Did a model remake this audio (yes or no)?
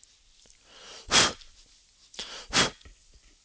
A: no